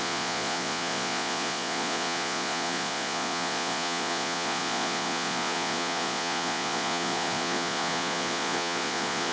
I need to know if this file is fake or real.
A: fake